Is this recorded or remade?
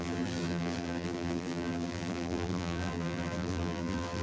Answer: remade